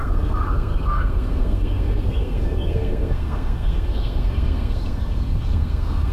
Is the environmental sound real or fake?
fake